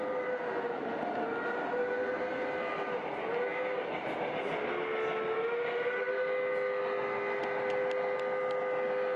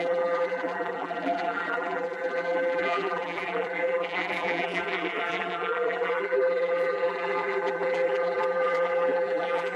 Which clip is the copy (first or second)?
second